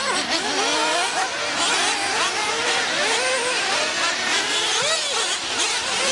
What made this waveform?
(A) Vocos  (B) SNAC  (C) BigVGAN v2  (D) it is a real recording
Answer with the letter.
D